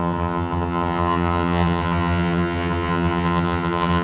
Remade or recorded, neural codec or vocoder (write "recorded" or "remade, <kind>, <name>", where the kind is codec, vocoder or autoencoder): remade, vocoder, HiFi-GAN